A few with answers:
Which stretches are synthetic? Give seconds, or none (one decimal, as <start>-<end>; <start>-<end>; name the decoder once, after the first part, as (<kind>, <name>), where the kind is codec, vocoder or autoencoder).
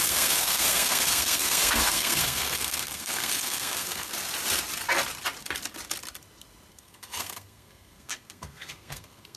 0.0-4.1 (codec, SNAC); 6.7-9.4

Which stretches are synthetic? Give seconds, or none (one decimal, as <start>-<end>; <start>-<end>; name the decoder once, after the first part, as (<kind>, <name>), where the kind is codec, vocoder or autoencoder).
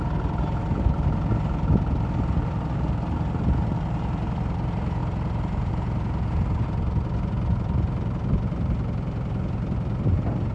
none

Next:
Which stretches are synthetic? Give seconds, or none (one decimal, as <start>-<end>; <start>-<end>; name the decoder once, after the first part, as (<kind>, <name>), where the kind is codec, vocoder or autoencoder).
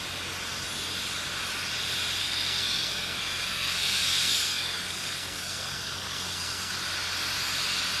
2.2-6.7 (codec, SNAC)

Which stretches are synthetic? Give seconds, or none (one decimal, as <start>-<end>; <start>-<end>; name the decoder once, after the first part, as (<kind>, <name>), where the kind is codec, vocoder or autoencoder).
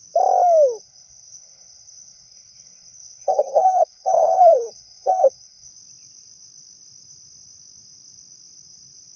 0.8-5.7 (codec, SNAC)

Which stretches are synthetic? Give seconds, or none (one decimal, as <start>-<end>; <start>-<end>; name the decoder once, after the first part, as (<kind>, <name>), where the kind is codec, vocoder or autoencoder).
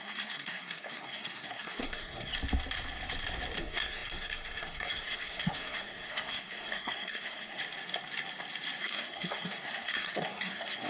0.0-2.3 (codec, SNAC); 3.6-7.6; 8.8-10.9